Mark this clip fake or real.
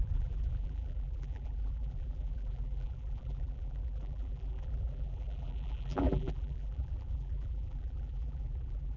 fake